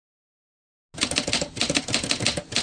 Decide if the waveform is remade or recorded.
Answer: recorded